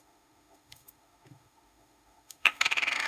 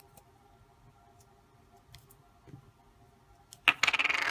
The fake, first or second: first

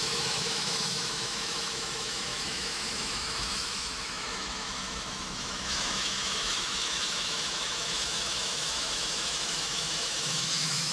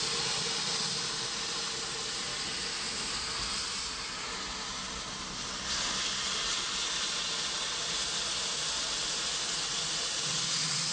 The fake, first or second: first